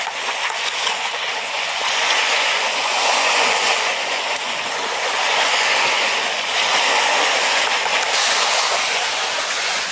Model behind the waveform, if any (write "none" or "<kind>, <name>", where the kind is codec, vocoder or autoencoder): vocoder, Vocos